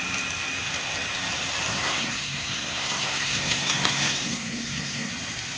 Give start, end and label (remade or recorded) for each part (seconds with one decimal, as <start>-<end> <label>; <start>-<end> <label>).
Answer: 0.0-1.7 recorded; 1.7-5.1 remade; 5.1-5.6 recorded